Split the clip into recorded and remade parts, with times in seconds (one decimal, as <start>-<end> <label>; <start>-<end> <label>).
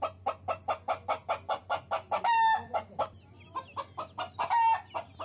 0.0-5.2 recorded